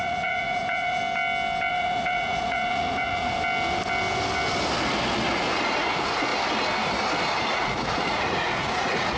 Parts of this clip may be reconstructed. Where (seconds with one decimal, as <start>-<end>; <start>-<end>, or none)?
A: 0.0-1.0; 1.7-3.3; 5.3-6.3; 7.4-9.2

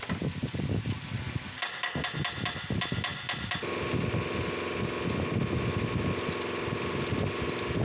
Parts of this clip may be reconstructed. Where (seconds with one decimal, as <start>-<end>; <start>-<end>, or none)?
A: none

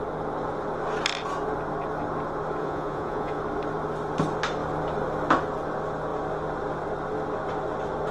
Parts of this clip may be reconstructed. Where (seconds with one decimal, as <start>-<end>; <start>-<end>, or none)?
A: 2.6-3.4

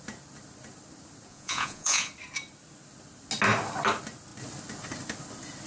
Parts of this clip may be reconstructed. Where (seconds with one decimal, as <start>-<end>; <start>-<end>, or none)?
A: 1.3-2.1

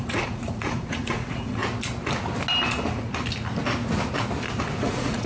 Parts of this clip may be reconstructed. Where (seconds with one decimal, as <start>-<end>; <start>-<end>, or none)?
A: 0.0-1.6; 4.8-5.3

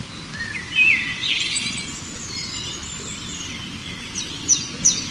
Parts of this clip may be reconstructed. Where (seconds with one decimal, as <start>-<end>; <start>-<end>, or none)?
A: 1.1-2.3; 3.8-5.1